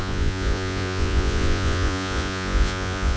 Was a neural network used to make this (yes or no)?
yes